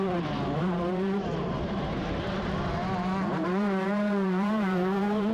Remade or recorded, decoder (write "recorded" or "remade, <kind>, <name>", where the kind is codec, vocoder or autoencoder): remade, vocoder, BigVGAN v2